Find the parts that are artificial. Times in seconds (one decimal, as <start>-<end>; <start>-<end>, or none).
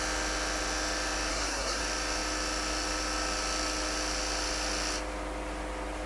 1.3-1.8